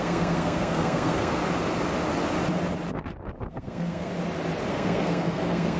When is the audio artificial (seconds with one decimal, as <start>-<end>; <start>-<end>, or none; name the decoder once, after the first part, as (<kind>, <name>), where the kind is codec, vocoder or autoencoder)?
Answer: 0.0-1.4 (codec, SNAC); 3.5-4.1; 4.7-5.8